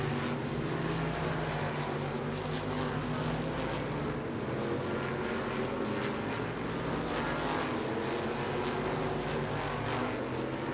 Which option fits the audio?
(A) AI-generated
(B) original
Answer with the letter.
B